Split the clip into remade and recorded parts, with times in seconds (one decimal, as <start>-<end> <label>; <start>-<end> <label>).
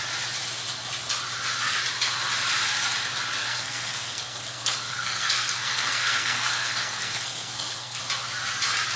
0.0-3.4 recorded; 3.4-8.0 remade; 8.0-9.0 recorded